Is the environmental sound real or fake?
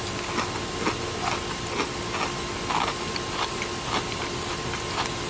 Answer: real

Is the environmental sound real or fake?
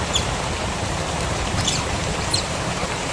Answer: fake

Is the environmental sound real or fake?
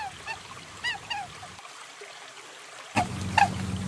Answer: real